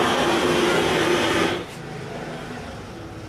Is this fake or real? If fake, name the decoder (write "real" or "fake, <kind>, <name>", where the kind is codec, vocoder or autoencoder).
real